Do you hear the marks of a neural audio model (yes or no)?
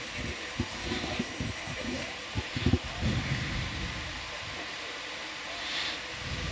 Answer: yes